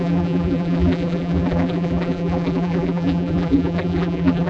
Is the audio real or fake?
fake